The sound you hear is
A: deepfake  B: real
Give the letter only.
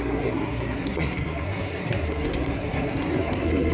A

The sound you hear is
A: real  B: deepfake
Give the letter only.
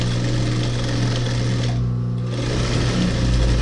A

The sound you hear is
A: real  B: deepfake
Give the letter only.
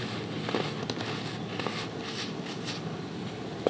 A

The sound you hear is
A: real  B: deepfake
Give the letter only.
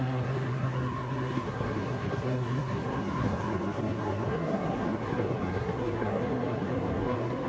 B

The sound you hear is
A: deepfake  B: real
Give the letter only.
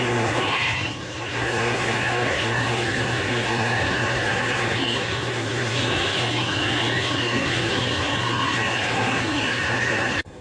A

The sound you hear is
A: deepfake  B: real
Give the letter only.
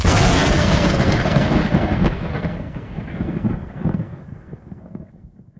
A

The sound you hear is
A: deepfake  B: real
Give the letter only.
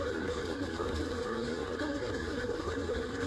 A